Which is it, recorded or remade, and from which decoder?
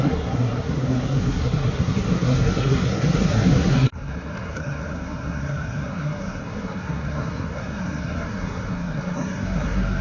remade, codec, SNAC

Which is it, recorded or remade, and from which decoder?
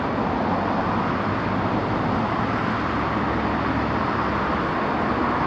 recorded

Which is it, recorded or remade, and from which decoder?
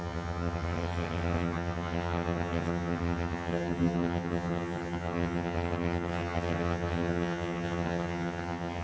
remade, vocoder, HiFi-GAN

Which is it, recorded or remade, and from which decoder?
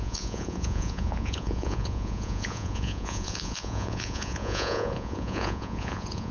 remade, vocoder, Vocos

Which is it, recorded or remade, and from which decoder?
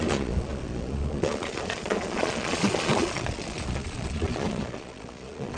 remade, vocoder, Vocos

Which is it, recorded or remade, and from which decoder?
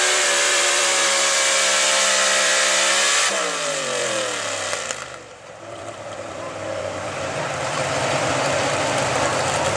remade, vocoder, BigVGAN v2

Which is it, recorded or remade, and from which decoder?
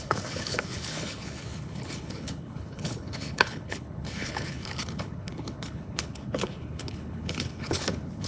remade, codec, HILCodec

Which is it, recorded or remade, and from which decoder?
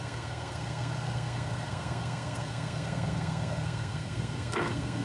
remade, codec, SNAC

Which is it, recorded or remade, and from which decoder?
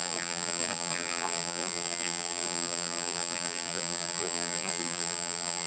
remade, vocoder, BigVGAN v2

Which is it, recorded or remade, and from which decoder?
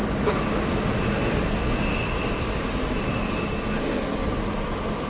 recorded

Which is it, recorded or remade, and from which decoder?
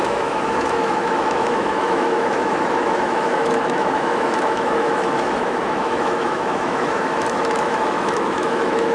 remade, autoencoder, DAC-VAE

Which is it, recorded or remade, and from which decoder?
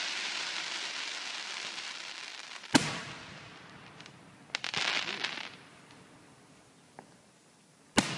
recorded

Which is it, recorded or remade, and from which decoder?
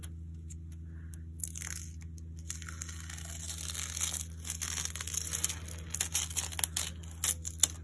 recorded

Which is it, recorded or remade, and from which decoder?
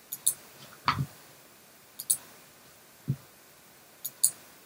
recorded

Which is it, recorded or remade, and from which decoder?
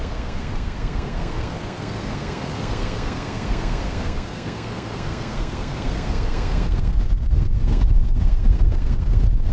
remade, codec, SNAC